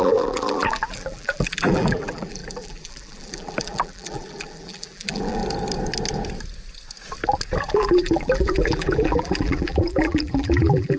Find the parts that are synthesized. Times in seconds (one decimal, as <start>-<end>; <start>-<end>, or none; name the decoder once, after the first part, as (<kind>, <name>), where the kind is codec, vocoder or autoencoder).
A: 0.0-5.4 (vocoder, BigVGAN v2); 7.7-11.0